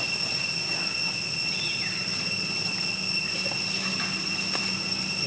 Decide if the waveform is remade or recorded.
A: recorded